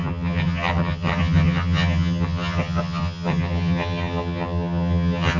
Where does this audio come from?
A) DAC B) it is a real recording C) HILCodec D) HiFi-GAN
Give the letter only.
D